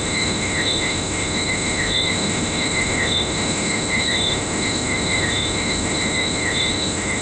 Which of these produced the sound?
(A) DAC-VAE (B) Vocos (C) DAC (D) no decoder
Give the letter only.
A